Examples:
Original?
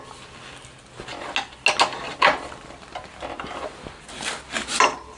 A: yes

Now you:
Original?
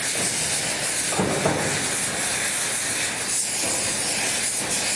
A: yes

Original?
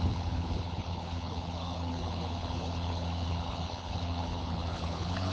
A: no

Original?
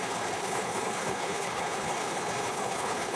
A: no